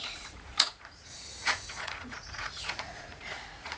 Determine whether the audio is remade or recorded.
remade